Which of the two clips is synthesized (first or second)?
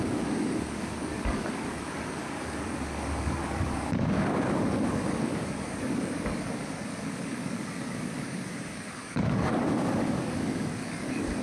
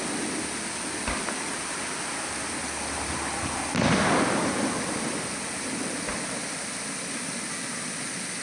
first